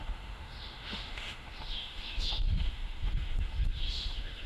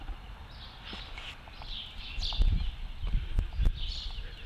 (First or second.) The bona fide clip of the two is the second